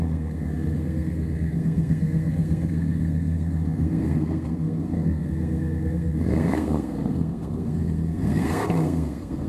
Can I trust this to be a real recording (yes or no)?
no